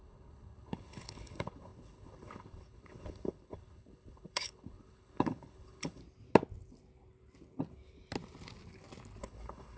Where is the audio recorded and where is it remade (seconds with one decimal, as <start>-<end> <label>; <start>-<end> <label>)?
0.0-6.0 remade; 6.0-9.2 recorded; 9.2-9.8 remade